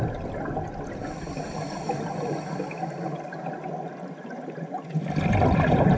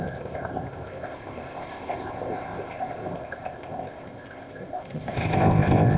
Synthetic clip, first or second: second